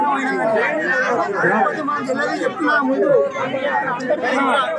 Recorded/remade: recorded